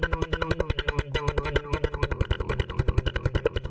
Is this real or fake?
real